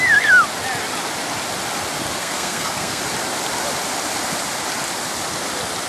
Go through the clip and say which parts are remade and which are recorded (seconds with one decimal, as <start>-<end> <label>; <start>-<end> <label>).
0.0-2.2 recorded; 2.2-3.0 remade; 3.0-5.9 recorded